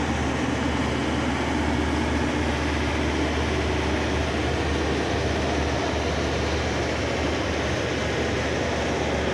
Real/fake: real